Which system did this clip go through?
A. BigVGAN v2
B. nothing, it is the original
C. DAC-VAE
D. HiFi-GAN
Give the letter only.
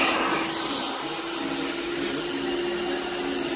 B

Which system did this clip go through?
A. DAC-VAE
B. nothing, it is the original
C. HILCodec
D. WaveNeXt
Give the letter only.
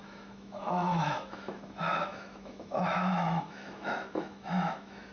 A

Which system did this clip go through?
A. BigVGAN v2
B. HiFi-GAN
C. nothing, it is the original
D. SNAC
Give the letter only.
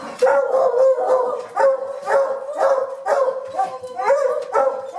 C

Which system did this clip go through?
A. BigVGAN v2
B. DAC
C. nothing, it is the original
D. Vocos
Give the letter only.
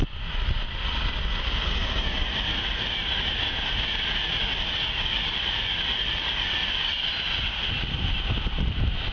C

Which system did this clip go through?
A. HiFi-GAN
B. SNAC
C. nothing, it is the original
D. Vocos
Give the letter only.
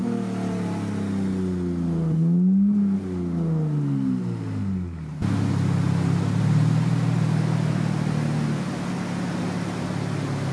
C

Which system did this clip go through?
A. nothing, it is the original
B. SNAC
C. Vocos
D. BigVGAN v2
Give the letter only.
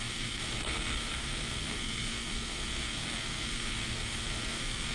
B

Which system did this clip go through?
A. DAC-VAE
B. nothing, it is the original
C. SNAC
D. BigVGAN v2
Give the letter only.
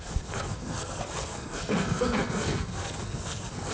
C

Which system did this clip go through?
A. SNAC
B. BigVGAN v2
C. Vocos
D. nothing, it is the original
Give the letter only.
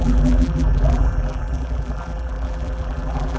B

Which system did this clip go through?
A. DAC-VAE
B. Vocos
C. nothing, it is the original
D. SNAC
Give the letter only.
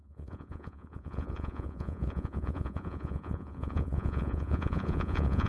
B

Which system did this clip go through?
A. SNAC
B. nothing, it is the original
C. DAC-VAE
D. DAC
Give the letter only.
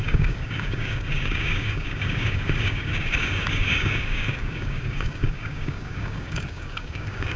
D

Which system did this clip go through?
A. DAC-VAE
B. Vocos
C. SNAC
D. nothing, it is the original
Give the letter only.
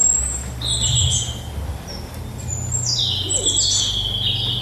D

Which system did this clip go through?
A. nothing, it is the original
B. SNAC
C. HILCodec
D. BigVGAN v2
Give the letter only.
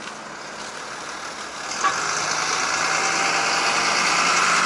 A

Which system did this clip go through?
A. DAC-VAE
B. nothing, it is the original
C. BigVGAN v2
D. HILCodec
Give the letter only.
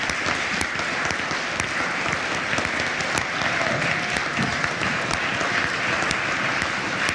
B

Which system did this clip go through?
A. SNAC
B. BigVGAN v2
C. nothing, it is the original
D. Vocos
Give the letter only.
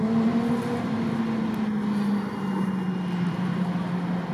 C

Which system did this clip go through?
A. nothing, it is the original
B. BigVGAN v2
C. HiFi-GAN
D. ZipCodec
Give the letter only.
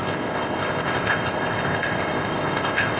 D